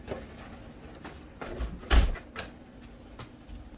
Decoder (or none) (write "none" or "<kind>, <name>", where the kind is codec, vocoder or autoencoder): none